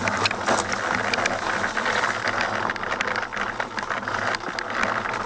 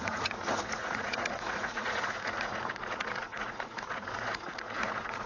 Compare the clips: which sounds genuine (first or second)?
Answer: first